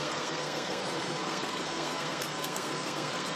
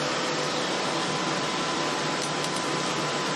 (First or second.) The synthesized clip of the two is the first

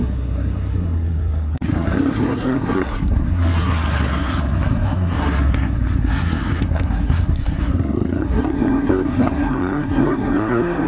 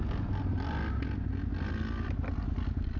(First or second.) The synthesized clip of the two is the first